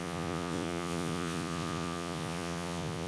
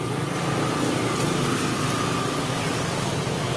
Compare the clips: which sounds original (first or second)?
second